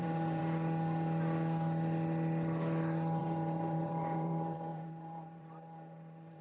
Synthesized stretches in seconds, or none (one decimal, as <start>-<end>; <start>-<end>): 0.0-0.4; 3.2-6.4